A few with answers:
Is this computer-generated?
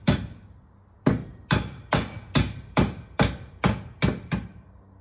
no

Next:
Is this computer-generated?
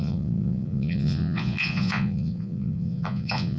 yes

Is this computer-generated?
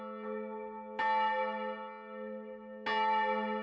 no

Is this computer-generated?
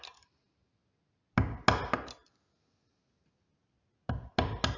no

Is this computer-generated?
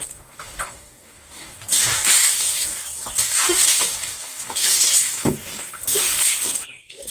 yes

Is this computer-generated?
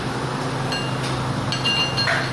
no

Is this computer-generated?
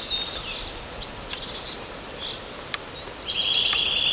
no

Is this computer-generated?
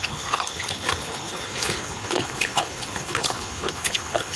yes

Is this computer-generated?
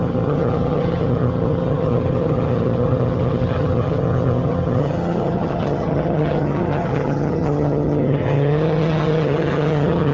yes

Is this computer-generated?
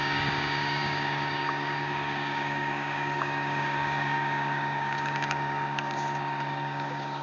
yes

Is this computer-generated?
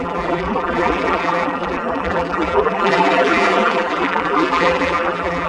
yes